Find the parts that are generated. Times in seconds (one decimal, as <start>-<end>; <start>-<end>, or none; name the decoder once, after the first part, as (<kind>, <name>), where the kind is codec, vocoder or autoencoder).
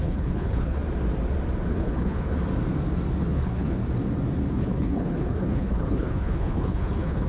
0.0-0.8 (codec, HILCodec); 1.7-2.3; 3.2-3.8; 4.5-7.3